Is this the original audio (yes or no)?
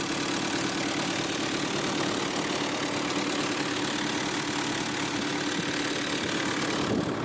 yes